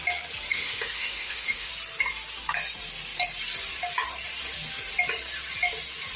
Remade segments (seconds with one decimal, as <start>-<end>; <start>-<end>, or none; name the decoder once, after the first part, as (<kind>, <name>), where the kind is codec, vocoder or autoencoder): 0.5-1.7 (autoencoder, DAC-VAE)